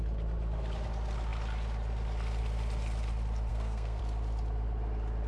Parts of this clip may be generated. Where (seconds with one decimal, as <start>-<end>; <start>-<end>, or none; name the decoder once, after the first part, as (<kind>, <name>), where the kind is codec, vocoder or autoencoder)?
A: 3.5-4.0 (codec, SNAC)